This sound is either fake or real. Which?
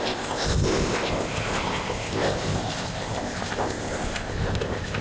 fake